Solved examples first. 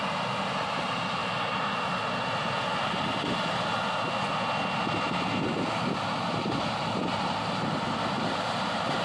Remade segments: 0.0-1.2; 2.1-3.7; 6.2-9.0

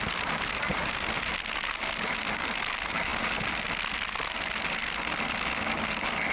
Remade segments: none

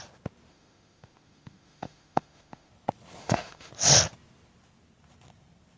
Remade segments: 0.5-2.7; 3.2-3.7

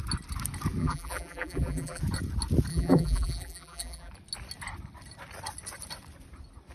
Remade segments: 0.8-2.0; 2.7-4.1

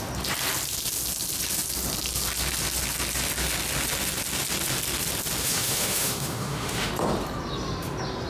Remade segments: 5.4-6.9

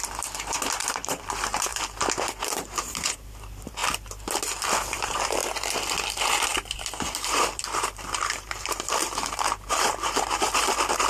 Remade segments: 0.0-1.7; 2.4-3.8; 5.0-5.4; 6.1-11.1